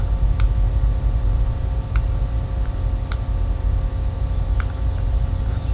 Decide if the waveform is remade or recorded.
recorded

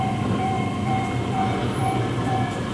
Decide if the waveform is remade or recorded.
remade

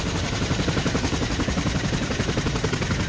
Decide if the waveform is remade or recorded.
recorded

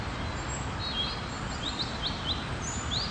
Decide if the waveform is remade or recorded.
recorded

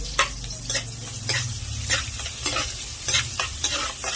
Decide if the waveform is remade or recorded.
recorded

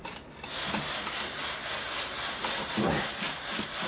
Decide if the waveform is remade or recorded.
recorded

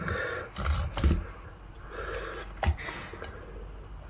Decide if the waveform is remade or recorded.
recorded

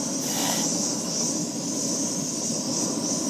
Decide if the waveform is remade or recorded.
recorded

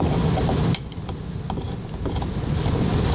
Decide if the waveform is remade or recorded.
recorded